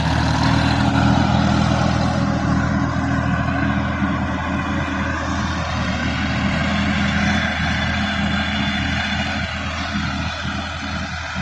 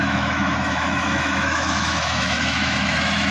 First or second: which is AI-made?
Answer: second